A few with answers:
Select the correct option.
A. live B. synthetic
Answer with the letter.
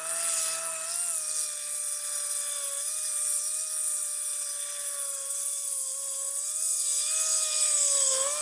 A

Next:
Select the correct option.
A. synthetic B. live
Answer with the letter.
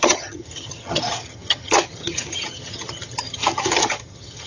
A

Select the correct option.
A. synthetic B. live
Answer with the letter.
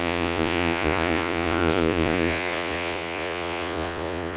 A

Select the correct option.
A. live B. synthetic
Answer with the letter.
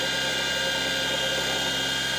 A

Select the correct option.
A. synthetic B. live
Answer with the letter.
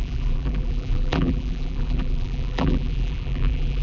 A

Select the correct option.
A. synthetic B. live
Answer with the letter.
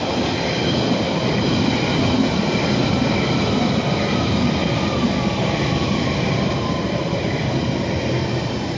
B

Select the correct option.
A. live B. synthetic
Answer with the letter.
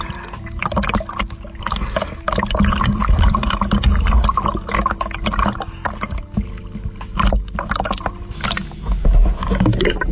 A